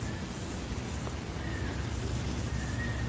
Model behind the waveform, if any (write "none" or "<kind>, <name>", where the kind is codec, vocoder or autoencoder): none